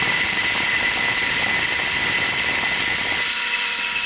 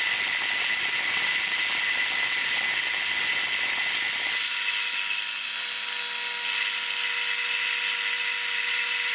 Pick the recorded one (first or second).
second